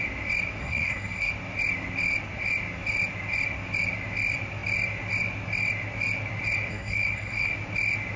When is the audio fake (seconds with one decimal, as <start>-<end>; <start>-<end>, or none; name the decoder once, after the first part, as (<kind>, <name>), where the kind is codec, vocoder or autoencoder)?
0.6-1.3 (codec, SNAC); 6.7-7.5